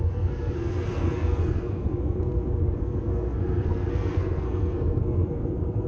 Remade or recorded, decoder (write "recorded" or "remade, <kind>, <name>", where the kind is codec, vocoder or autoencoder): remade, codec, SNAC